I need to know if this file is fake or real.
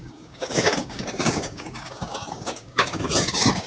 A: fake